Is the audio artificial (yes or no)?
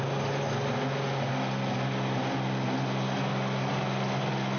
no